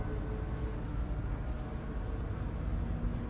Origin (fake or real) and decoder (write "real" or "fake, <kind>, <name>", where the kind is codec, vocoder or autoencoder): real